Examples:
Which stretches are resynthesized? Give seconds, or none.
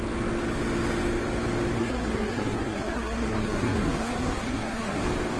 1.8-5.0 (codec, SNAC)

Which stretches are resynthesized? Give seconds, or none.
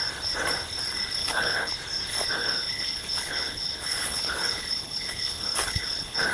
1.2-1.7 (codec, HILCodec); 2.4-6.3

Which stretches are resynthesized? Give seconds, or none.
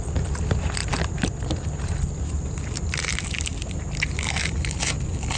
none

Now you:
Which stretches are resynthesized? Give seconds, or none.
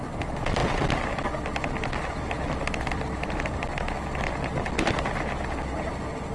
none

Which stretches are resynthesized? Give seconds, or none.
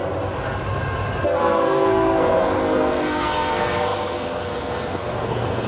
1.4-5.7 (codec, SNAC)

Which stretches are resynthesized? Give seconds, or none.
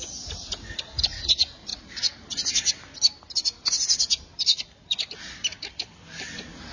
none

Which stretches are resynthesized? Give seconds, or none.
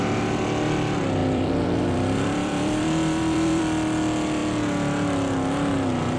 1.2-3.6 (vocoder, BigVGAN v2)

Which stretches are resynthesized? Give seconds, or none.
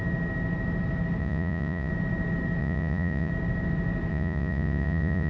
1.2-1.9 (vocoder, Vocos); 2.6-3.3; 4.1-5.3